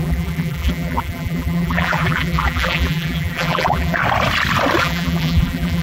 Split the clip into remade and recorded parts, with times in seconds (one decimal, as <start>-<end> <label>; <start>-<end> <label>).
0.0-4.0 remade; 4.0-4.8 recorded; 4.8-5.8 remade